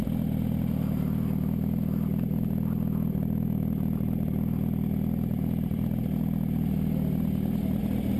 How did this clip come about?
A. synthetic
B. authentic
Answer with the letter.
B